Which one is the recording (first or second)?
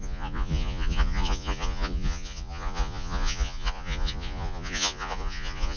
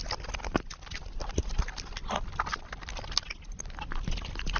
second